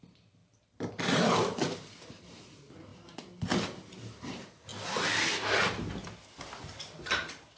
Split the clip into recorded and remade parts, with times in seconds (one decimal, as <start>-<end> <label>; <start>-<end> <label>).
0.0-2.9 remade; 2.9-4.0 recorded; 4.0-4.7 remade; 4.7-6.6 recorded; 6.6-7.6 remade